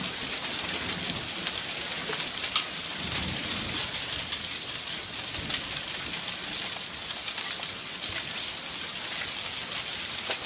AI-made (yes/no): no